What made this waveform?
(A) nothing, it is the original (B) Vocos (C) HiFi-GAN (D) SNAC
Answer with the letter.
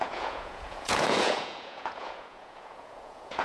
B